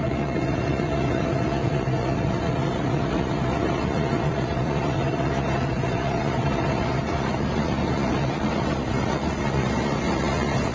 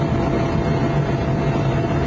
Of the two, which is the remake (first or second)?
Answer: first